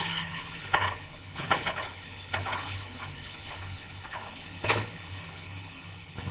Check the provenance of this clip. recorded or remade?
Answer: remade